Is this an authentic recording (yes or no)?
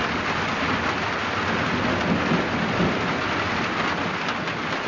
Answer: yes